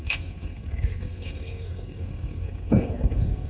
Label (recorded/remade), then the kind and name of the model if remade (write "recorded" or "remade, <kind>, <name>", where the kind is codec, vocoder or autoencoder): remade, codec, SNAC